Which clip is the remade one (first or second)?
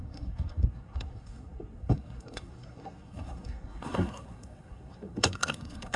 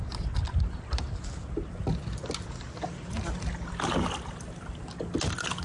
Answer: first